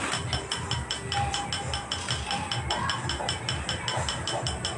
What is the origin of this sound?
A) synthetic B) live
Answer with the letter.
B